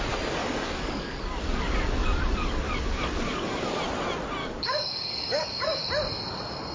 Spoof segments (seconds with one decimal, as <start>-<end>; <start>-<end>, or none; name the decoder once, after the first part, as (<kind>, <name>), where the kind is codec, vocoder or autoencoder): 0.4-3.7 (codec, DAC); 4.4-5.9